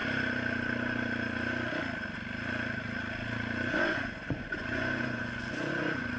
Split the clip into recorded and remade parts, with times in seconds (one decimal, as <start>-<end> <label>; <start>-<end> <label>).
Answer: 0.0-3.7 recorded; 3.7-6.2 remade